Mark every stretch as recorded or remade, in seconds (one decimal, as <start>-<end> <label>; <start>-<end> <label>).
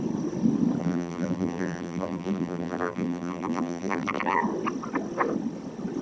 0.0-0.8 recorded; 0.8-4.4 remade; 4.4-6.0 recorded